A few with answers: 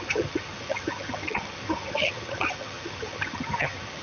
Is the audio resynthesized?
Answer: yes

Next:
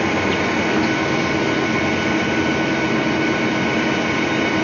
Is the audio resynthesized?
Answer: no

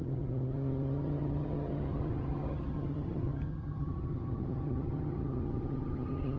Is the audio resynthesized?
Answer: yes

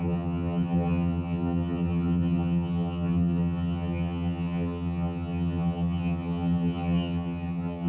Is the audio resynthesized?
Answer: yes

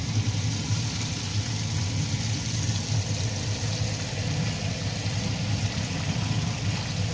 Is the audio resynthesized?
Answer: no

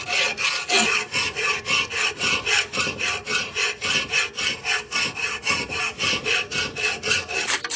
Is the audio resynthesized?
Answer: no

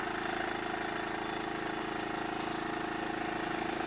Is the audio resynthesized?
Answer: no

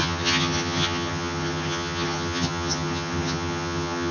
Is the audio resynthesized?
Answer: yes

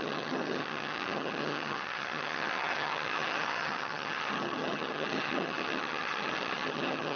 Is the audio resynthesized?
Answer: yes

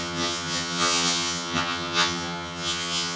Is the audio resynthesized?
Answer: yes